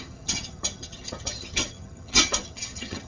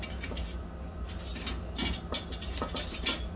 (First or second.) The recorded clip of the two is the second